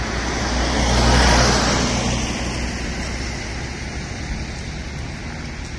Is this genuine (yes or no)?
yes